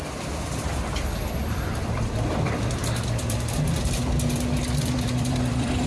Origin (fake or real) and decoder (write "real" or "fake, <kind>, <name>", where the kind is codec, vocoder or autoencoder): fake, vocoder, BigVGAN v2